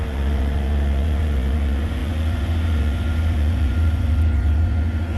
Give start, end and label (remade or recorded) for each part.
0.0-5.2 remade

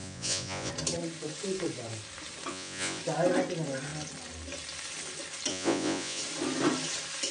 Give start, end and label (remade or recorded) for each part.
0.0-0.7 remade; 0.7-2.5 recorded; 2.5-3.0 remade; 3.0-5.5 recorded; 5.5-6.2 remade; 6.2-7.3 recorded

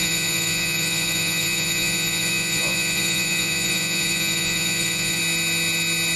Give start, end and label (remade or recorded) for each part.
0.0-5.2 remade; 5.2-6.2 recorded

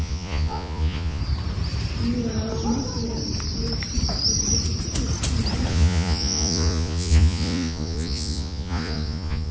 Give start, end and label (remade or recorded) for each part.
0.0-1.2 remade; 1.2-5.7 recorded; 5.7-9.5 remade